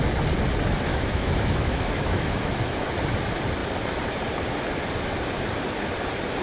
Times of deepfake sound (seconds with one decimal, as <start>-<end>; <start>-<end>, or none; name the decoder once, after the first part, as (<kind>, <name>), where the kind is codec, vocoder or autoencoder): 0.9-2.8 (autoencoder, DAC-VAE)